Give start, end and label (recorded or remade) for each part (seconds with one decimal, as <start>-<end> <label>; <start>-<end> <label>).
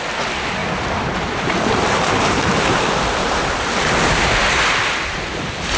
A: 0.0-0.6 recorded; 0.6-3.4 remade; 3.4-5.8 recorded